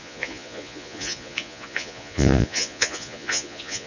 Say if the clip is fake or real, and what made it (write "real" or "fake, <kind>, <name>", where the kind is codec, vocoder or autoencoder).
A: fake, vocoder, Vocos